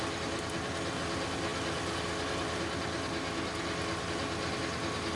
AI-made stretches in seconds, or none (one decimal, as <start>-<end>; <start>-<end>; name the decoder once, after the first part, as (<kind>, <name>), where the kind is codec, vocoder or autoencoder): none